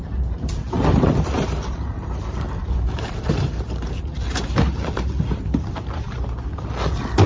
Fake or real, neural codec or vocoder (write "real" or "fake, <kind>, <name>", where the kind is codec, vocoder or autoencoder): fake, vocoder, BigVGAN v2